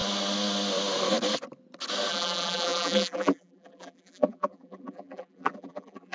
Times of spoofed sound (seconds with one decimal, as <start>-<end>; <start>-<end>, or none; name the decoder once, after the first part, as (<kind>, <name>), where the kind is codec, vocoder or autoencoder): 2.1-6.1 (vocoder, BigVGAN v2)